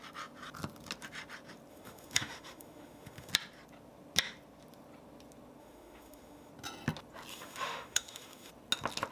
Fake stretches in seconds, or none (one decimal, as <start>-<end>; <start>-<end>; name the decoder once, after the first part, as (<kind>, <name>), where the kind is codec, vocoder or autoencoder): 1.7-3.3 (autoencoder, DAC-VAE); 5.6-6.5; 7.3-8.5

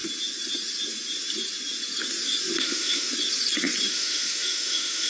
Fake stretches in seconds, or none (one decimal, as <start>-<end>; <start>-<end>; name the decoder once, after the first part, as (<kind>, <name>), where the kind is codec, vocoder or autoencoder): 2.6-3.1 (autoencoder, DAC-VAE); 3.9-5.1

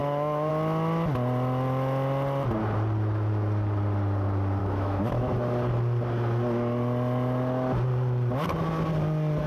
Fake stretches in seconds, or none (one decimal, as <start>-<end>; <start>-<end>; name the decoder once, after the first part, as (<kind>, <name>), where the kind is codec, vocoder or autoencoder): 0.0-0.5 (autoencoder, DAC-VAE); 4.6-5.3

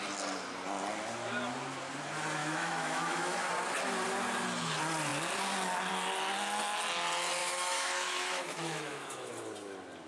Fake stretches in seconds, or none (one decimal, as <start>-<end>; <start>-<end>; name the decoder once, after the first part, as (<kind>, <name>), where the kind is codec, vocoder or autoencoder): 2.4-3.5 (autoencoder, DAC-VAE); 7.4-9.3